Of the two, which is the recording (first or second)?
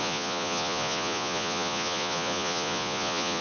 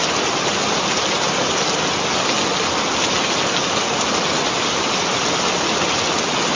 second